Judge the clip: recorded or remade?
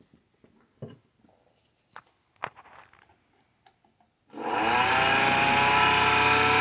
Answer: recorded